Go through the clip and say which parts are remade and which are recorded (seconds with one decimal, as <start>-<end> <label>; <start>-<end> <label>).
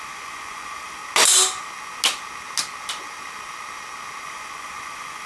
0.0-1.0 remade; 1.0-4.2 recorded; 4.2-5.3 remade